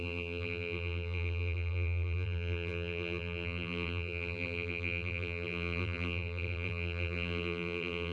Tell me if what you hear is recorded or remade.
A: remade